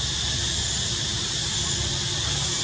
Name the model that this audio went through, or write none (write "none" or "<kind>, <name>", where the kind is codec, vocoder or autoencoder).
none